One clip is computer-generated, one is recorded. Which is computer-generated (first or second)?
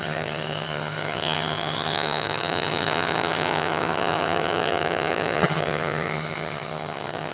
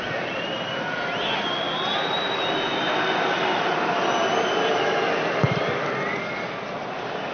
first